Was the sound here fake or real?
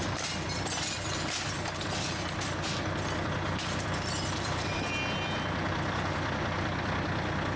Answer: real